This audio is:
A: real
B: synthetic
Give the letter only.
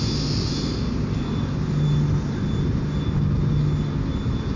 A